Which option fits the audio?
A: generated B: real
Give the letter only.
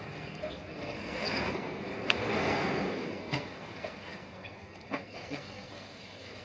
A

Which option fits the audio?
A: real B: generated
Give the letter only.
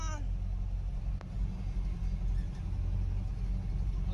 A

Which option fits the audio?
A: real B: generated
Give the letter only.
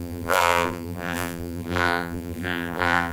B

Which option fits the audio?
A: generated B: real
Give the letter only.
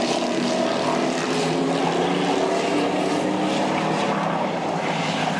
B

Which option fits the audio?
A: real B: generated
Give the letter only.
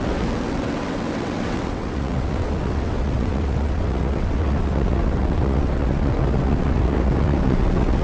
B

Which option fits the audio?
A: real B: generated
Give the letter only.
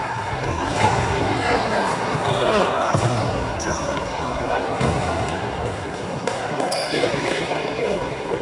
B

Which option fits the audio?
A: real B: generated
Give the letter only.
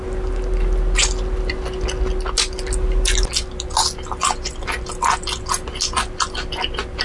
A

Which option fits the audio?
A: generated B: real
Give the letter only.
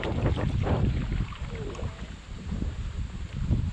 A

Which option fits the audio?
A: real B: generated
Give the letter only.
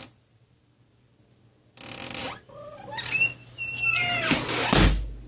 A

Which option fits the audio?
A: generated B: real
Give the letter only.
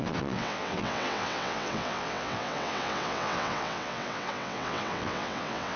A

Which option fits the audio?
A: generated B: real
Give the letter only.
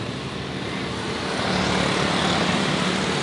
B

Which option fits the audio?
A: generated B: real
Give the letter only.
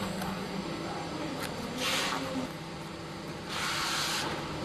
B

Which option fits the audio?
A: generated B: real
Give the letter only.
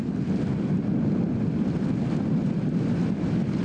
B